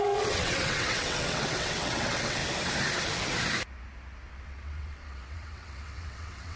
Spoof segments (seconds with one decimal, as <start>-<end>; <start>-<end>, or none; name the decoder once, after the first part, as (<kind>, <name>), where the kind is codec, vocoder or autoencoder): 0.0-2.4 (vocoder, WaveNeXt); 4.3-6.6